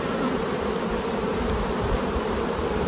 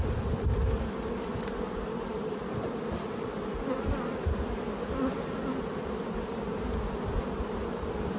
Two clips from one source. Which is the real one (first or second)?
second